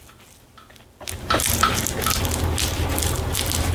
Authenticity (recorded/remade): recorded